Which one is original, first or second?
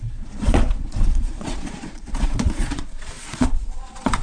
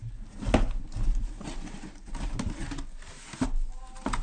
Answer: second